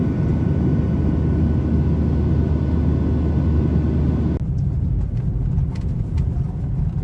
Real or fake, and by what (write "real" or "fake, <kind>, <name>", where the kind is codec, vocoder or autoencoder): real